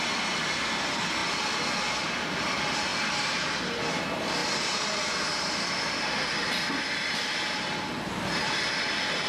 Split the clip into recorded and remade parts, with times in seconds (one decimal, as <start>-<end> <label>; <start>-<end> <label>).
0.0-2.9 recorded; 2.9-4.0 remade; 4.0-9.3 recorded